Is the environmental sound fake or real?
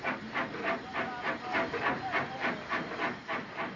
real